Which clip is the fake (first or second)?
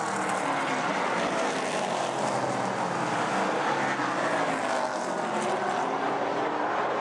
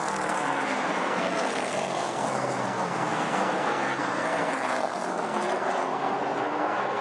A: second